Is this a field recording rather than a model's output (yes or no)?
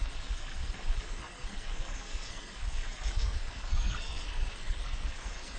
no